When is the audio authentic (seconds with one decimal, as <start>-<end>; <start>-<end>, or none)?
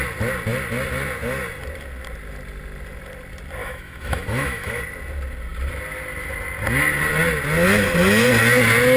0.0-3.6; 4.8-9.0